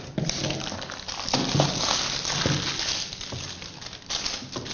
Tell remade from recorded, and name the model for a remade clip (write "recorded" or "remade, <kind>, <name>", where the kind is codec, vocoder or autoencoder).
recorded